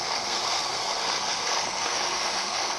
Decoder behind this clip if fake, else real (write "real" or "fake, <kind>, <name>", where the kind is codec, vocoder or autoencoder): fake, codec, SNAC